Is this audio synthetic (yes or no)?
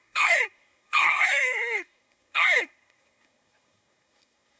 yes